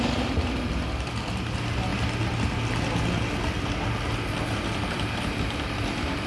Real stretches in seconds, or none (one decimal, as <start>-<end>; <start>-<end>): 0.0-6.3